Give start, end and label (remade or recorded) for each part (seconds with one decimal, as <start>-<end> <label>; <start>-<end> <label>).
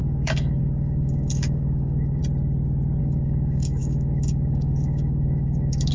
0.0-2.2 remade; 2.2-3.0 recorded; 3.0-5.9 remade